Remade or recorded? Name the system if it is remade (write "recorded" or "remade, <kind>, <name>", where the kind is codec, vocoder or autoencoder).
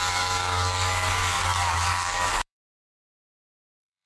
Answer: remade, codec, DAC